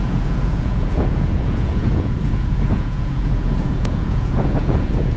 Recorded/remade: remade